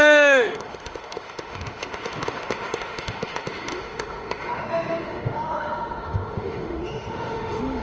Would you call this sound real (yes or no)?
no